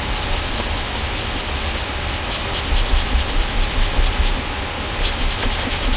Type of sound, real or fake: real